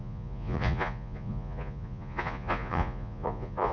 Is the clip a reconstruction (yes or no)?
yes